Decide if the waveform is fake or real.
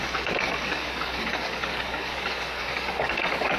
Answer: fake